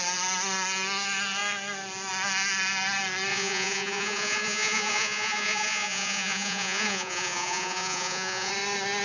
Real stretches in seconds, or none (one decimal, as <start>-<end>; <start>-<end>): 0.0-3.3; 8.5-9.0